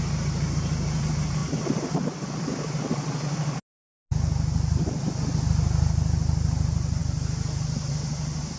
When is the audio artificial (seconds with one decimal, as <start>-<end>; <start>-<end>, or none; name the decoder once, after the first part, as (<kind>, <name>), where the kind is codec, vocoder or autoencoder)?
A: none